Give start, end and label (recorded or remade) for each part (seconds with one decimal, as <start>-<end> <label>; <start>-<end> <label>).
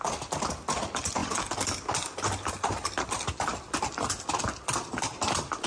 0.0-5.7 recorded